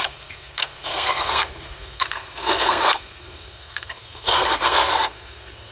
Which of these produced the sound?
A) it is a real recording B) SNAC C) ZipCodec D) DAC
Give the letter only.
B